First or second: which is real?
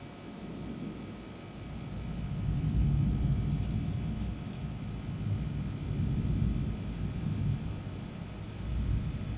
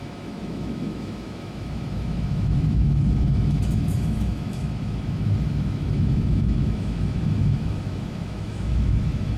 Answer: first